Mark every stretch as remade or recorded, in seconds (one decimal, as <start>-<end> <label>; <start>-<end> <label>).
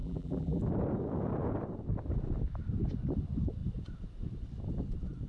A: 0.0-0.6 remade; 0.6-5.3 recorded